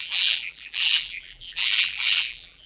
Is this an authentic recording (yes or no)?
no